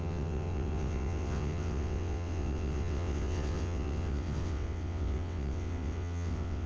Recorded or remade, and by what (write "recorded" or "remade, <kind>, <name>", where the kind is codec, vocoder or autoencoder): remade, vocoder, WaveNeXt